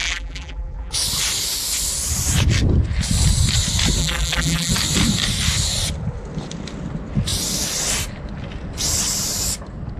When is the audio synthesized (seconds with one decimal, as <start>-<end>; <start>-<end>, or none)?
0.0-0.9; 4.0-4.7

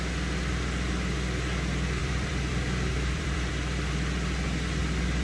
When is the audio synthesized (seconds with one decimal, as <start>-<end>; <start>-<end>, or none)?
2.0-3.5